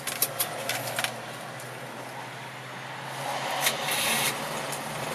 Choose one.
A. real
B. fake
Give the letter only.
A